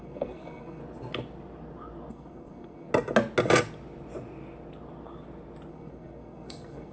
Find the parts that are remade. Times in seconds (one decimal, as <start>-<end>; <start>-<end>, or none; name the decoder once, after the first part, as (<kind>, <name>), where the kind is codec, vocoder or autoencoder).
0.0-0.8 (codec, SNAC); 2.1-2.9; 5.7-6.9